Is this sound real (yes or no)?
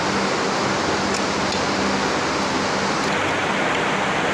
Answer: yes